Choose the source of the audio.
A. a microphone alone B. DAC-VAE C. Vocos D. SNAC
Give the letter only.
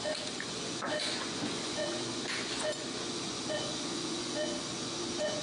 C